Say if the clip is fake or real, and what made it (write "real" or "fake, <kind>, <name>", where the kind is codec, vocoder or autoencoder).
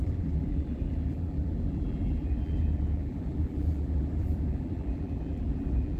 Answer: fake, vocoder, BigVGAN v2